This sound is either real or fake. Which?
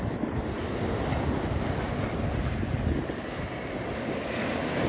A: real